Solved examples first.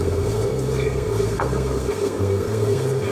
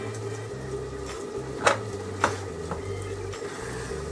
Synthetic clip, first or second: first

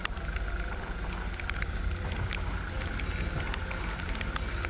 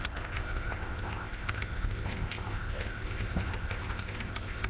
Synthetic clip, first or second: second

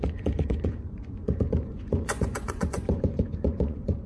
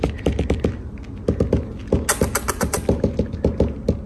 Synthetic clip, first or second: first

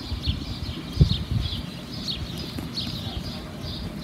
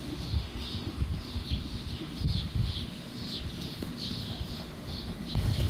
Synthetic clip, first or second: second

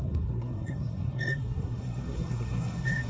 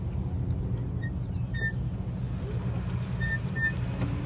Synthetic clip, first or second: first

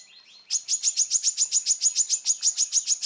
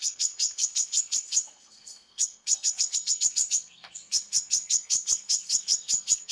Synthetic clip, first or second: second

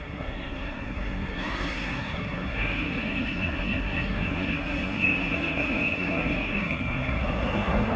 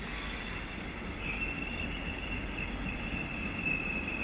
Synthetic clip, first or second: first